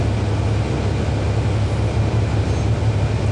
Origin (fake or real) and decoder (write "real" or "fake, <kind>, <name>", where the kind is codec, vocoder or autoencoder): real